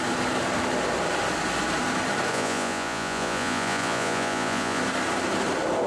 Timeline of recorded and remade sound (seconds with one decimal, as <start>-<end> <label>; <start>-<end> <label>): 0.0-2.3 recorded; 2.3-4.8 remade; 4.8-5.9 recorded